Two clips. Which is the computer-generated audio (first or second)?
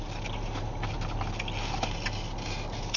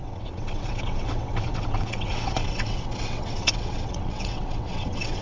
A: second